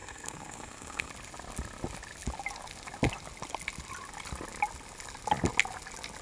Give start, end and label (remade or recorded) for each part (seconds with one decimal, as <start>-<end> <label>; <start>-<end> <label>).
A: 0.0-1.1 remade; 1.1-6.2 recorded